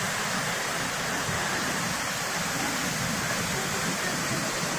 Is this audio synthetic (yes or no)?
no